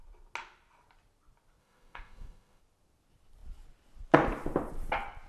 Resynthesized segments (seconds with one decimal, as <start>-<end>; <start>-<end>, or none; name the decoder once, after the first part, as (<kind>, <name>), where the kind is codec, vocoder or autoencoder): 1.6-2.6 (autoencoder, DAC-VAE)